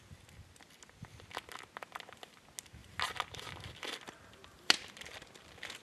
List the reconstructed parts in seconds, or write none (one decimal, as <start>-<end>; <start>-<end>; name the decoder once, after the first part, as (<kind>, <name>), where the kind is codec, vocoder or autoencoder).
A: none